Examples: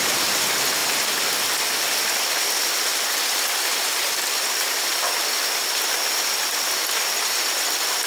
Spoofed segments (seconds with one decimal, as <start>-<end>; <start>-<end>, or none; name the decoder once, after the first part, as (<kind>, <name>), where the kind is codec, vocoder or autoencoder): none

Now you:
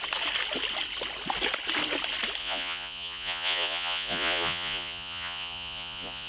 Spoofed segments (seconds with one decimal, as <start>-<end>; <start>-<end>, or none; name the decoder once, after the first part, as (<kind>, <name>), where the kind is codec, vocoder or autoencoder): 2.4-6.3 (vocoder, Vocos)

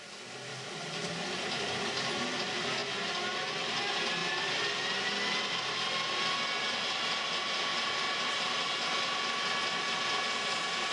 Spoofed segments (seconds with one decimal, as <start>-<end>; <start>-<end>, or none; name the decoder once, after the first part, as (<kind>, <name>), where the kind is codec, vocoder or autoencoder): 0.5-1.7 (vocoder, BigVGAN v2); 4.2-5.1; 7.7-8.6